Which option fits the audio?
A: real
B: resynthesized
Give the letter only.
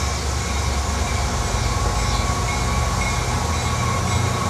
A